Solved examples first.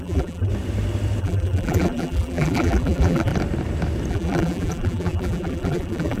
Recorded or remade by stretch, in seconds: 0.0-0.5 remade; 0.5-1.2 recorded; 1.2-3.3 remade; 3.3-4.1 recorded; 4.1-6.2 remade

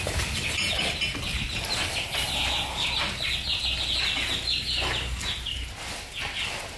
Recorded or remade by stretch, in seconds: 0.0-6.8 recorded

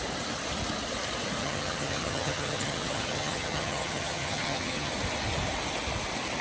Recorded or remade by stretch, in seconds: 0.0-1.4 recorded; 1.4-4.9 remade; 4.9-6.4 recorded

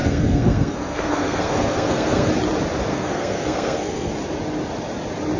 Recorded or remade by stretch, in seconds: 0.0-2.3 remade; 2.3-2.9 recorded; 2.9-4.1 remade; 4.1-5.4 recorded

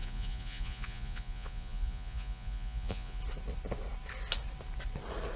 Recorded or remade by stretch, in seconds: 0.0-3.2 remade; 3.2-5.4 recorded

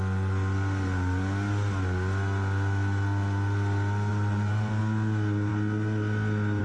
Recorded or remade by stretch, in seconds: 0.0-4.1 recorded; 4.1-4.8 remade; 4.8-6.6 recorded

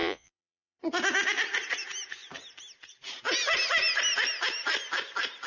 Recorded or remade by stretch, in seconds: 0.0-0.8 remade; 0.8-5.5 recorded